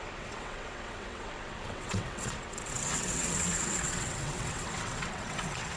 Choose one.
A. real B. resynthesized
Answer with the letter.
B